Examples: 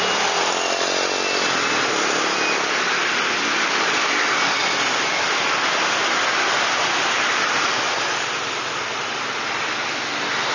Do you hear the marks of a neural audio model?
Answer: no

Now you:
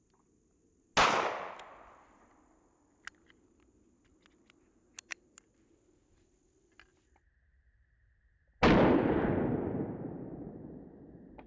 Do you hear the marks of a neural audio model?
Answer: no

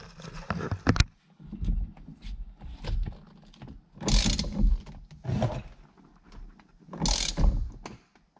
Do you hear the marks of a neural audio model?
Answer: no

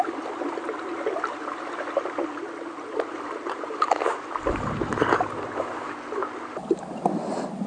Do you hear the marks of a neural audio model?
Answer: no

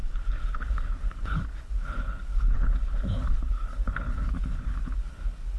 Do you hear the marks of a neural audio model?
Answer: yes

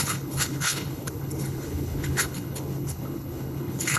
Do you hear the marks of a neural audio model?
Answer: yes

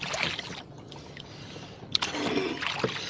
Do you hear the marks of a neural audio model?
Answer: no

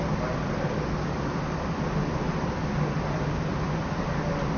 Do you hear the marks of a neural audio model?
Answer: no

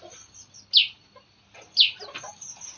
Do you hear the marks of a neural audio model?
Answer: no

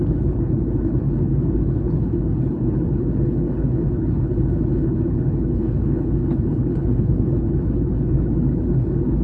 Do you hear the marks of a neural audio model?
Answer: yes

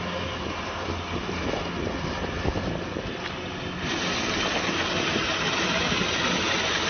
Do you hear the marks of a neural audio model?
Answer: no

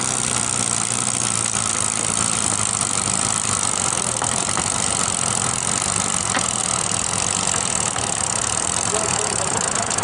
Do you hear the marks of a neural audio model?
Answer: no